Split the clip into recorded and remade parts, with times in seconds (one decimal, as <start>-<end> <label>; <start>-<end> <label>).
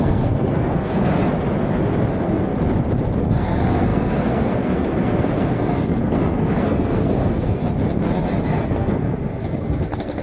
0.0-1.2 remade; 1.2-2.1 recorded; 2.1-2.5 remade; 2.5-3.2 recorded; 3.2-7.6 remade; 7.6-8.5 recorded; 8.5-10.2 remade